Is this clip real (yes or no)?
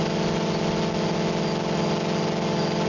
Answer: yes